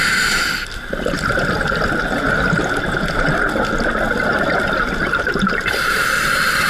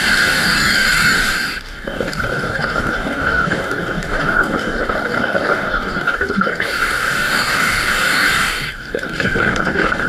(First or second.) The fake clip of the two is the second